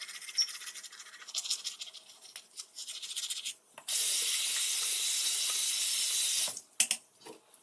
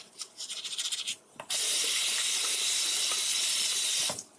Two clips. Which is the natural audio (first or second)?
first